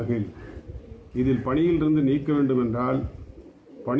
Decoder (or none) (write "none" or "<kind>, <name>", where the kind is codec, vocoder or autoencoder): none